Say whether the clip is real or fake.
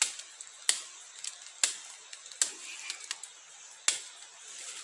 real